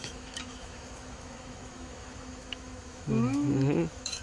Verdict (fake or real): fake